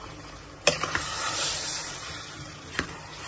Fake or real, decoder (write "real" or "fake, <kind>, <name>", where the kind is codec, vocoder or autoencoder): fake, vocoder, BigVGAN v2